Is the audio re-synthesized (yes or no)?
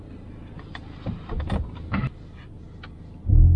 no